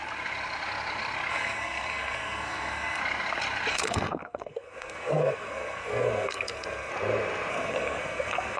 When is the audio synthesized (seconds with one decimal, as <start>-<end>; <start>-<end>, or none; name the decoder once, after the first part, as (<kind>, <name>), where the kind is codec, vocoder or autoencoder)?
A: 1.3-3.0 (codec, SNAC); 3.7-6.9; 7.5-8.6